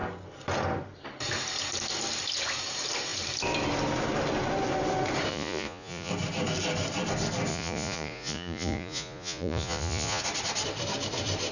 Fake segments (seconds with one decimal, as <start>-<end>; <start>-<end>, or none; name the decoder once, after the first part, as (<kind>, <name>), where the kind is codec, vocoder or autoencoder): 5.3-6.1 (vocoder, Vocos); 7.5-10.2